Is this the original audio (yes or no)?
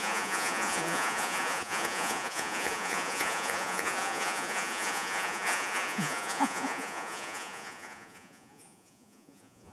no